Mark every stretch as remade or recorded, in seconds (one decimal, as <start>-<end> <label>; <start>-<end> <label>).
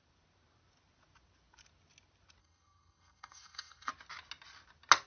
0.0-2.4 recorded; 2.4-3.9 remade; 3.9-5.1 recorded